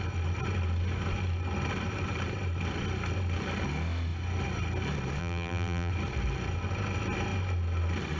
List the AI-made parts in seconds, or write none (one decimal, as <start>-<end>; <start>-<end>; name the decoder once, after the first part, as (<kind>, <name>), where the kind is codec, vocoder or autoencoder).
5.2-5.9 (vocoder, BigVGAN v2)